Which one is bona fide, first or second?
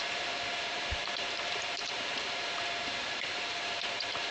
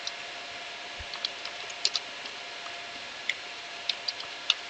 second